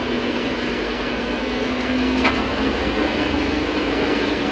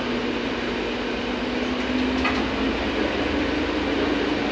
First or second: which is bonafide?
second